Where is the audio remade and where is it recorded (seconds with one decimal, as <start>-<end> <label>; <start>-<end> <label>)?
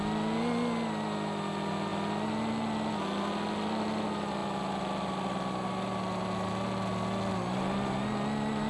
0.0-8.7 recorded